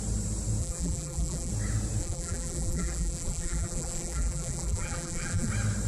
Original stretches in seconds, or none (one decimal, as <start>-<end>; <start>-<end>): 0.0-0.6; 1.5-2.0; 5.5-5.9